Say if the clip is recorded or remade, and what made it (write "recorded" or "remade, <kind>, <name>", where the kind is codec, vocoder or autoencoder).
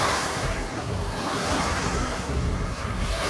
remade, codec, SNAC